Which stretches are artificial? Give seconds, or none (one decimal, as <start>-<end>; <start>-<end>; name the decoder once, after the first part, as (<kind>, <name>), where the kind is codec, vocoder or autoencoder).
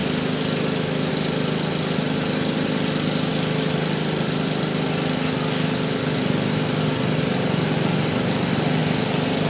none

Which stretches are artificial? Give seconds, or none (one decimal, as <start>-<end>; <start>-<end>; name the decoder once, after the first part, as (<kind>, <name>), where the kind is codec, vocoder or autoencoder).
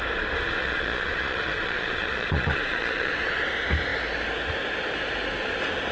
0.6-3.1 (vocoder, Vocos)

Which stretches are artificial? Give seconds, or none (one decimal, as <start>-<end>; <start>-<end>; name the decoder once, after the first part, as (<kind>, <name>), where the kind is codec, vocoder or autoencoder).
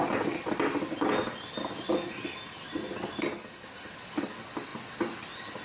none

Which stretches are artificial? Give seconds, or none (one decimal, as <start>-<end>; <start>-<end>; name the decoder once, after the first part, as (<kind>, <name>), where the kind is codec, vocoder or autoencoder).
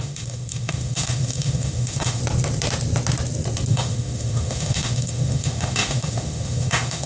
0.0-2.2 (autoencoder, DAC-VAE); 3.7-7.1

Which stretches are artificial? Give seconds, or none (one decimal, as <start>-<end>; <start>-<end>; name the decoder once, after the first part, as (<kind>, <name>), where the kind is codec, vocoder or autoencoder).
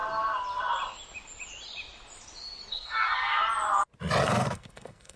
2.7-3.4 (codec, SNAC); 4.2-5.2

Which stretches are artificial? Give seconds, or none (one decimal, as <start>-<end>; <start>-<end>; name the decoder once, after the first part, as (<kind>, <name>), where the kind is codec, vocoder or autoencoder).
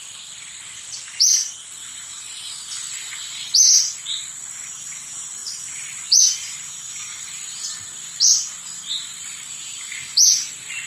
none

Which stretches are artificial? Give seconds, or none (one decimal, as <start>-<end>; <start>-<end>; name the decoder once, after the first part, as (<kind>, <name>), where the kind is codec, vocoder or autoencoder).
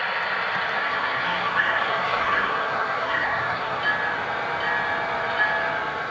0.8-3.8 (codec, SNAC)